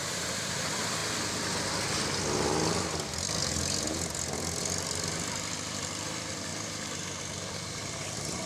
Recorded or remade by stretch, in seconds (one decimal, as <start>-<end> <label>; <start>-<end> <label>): 0.0-1.0 remade; 1.0-4.6 recorded; 4.6-6.5 remade; 6.5-7.2 recorded; 7.2-8.5 remade